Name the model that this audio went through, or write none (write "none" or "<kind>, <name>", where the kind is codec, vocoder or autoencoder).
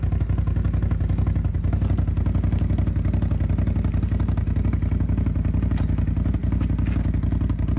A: none